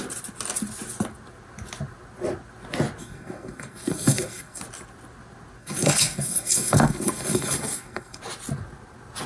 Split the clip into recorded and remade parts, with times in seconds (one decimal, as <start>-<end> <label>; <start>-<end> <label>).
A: 0.0-3.0 recorded; 3.0-4.6 remade; 4.6-5.6 recorded; 5.6-8.2 remade; 8.2-9.3 recorded